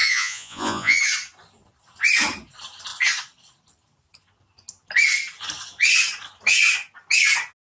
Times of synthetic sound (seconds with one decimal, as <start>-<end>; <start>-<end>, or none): 0.0-1.0